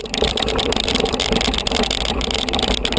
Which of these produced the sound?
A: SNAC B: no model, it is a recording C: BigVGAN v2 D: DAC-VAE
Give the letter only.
C